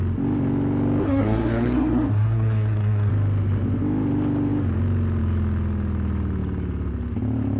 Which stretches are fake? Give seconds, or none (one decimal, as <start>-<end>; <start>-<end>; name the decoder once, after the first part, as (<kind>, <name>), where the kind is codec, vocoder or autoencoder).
1.0-3.1 (codec, SNAC)